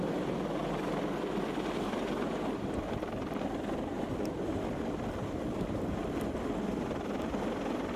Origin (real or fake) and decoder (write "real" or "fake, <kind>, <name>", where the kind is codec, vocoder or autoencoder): real